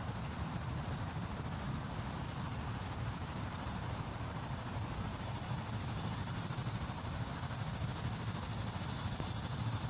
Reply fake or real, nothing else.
fake